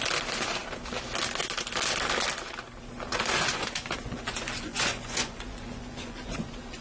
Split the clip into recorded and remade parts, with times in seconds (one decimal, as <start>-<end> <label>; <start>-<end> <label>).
0.0-3.1 recorded; 3.1-6.8 remade